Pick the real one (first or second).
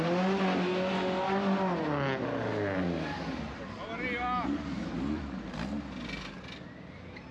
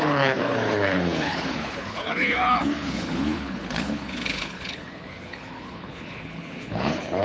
first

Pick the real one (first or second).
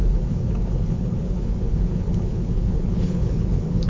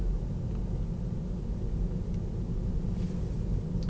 second